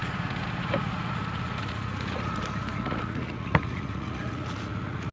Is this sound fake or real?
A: fake